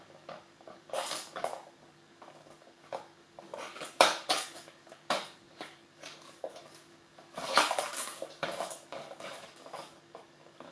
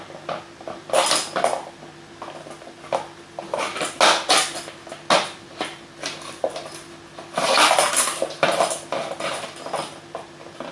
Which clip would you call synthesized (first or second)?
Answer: first